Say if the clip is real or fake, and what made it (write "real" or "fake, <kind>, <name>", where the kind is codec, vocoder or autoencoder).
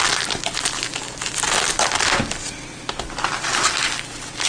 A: real